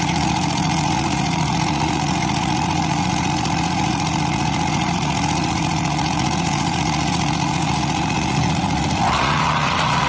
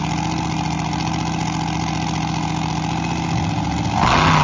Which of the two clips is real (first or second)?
second